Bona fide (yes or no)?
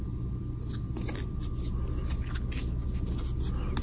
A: yes